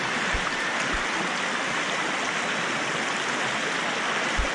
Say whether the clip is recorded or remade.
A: recorded